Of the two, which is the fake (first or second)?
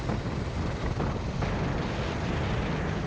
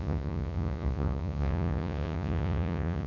second